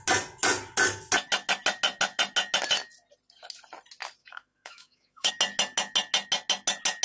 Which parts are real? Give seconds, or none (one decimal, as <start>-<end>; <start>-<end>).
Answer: 0.0-4.2; 5.3-7.0